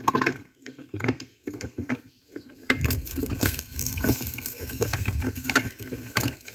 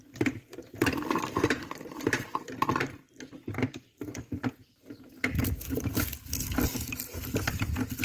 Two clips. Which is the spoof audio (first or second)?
first